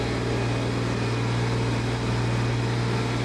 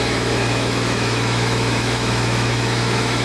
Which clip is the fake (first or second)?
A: second